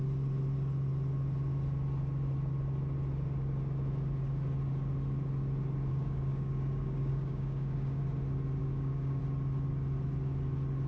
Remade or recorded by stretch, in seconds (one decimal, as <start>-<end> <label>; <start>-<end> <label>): 0.0-5.9 recorded; 5.9-8.0 remade; 8.0-8.6 recorded; 8.6-9.2 remade; 9.2-10.9 recorded